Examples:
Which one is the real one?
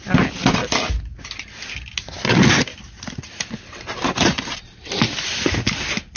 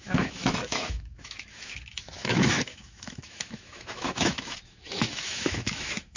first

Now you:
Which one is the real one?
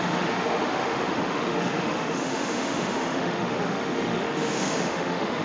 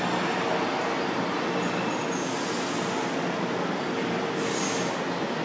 second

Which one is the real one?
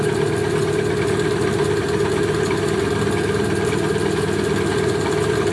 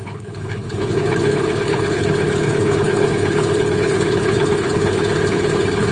first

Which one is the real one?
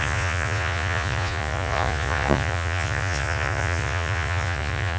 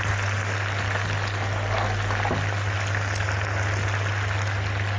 second